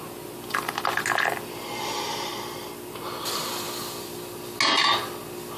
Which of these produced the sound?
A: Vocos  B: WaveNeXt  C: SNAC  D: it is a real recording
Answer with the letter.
D